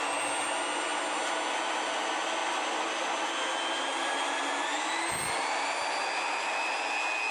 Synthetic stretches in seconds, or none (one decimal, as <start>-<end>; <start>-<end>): none